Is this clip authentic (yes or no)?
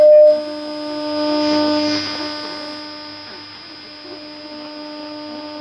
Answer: yes